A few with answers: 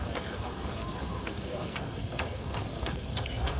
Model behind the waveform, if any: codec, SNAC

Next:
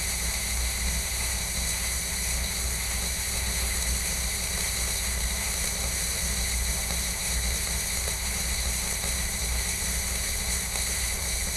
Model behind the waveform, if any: codec, SNAC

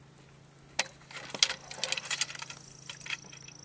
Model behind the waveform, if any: none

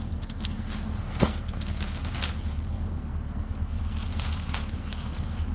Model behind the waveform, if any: codec, SNAC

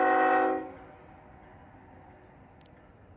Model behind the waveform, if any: none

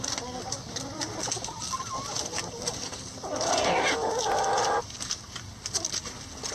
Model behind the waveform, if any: none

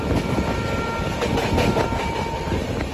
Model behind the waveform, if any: none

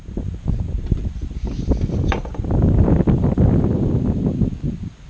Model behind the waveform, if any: none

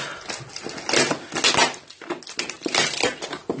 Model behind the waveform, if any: none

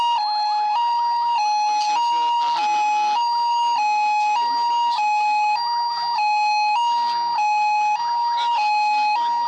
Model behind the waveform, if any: none